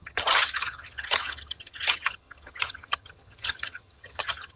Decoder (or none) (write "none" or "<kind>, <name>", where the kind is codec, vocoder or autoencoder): vocoder, HiFi-GAN